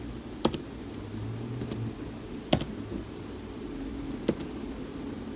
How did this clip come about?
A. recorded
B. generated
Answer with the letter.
A